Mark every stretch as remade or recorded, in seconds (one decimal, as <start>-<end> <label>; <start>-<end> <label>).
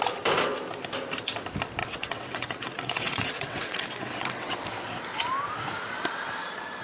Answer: 0.0-1.8 recorded; 1.8-4.6 remade; 4.6-6.8 recorded